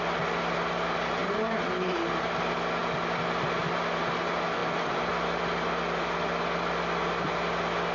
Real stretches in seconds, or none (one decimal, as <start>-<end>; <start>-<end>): 0.0-1.2; 2.0-7.9